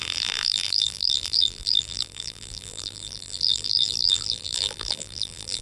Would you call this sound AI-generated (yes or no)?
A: yes